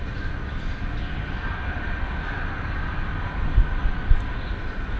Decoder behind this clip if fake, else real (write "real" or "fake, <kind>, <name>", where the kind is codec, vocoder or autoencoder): real